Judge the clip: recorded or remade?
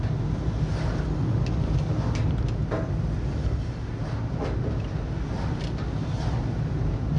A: recorded